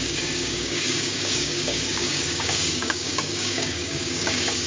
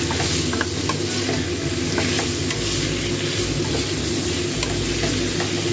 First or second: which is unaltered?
second